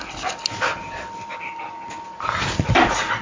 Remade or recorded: recorded